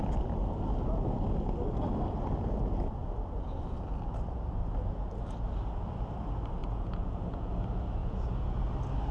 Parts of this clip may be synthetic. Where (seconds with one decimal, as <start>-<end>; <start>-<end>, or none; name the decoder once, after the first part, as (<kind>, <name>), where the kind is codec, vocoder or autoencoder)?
6.6-7.5 (vocoder, Vocos); 8.0-8.6